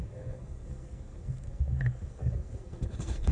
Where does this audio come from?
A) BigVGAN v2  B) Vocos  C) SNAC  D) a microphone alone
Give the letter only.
C